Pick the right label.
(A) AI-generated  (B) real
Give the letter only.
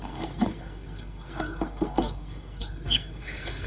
A